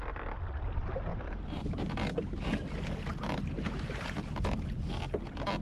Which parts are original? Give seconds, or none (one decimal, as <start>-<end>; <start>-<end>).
0.0-1.1; 2.3-3.1; 4.8-5.6

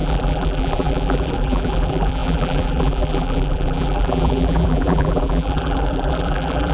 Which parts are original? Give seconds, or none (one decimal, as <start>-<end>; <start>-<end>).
none

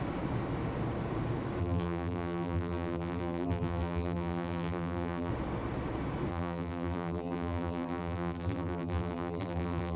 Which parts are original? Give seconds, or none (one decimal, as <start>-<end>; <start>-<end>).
0.0-1.6; 5.3-6.3

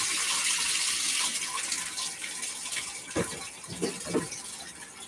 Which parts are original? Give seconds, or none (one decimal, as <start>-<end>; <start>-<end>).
0.0-5.1

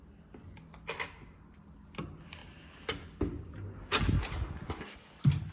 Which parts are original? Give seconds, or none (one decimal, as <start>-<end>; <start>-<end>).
0.0-5.5

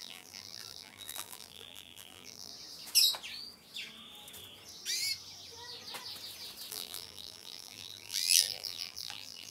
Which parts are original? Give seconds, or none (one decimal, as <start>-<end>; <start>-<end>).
2.5-6.7

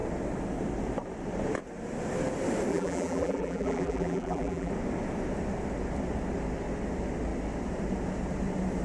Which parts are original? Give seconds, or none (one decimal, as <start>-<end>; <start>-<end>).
0.0-2.7; 4.7-8.8

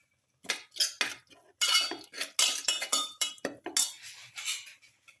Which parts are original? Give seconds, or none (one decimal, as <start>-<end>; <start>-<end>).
0.0-2.6; 3.3-5.2